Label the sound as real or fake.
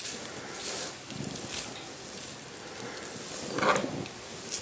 real